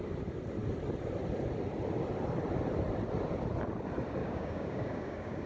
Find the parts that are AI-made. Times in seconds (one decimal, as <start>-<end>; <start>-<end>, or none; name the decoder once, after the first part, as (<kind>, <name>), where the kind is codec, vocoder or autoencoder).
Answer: 4.2-5.5 (codec, DAC)

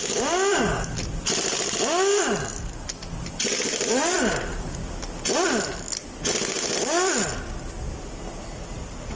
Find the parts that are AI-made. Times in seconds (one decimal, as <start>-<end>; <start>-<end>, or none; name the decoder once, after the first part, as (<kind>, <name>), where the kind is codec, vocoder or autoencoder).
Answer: none